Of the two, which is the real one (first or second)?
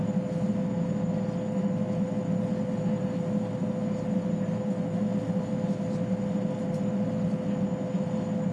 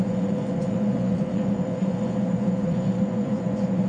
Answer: first